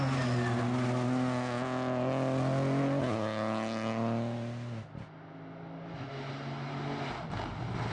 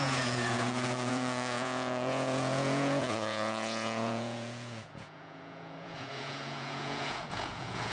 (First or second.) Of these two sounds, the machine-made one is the second